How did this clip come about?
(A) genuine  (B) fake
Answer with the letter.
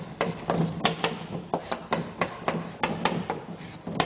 A